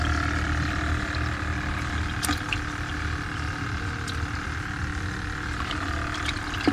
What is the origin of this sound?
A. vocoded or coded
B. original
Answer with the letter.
B